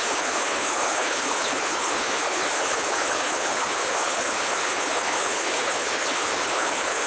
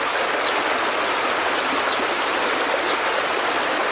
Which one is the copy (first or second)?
first